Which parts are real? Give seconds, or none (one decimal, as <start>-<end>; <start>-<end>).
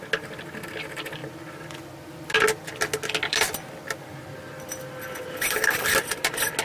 0.0-6.6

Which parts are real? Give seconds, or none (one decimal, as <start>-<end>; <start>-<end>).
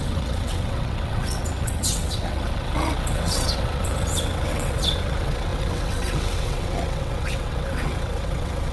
none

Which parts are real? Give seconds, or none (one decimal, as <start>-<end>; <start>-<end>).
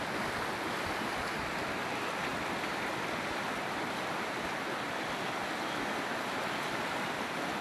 0.0-7.6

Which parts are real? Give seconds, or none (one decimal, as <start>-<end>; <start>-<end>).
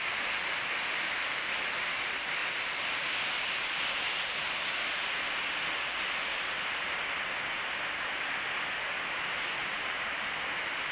0.0-10.9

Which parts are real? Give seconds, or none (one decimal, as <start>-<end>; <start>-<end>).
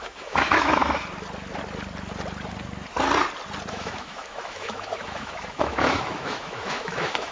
0.8-3.7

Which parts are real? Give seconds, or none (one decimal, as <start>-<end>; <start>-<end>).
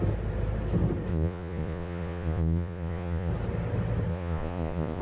0.0-1.1; 3.3-4.1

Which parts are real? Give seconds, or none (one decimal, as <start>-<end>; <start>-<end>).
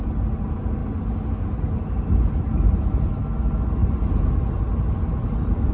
0.0-5.7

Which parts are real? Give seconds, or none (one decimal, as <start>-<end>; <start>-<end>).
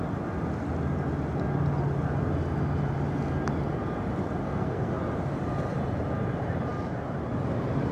0.0-4.4; 4.9-7.9